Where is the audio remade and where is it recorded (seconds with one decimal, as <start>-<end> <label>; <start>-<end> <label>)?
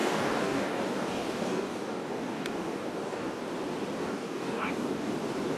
0.0-3.4 remade; 3.4-4.0 recorded; 4.0-5.1 remade; 5.1-5.6 recorded